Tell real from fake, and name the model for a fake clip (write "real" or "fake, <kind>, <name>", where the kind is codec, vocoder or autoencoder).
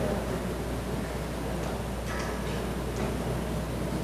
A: real